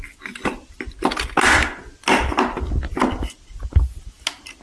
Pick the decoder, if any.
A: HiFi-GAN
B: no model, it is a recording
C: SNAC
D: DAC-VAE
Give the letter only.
B